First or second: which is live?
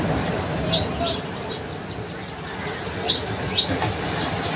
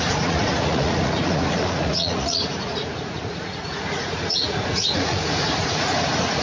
first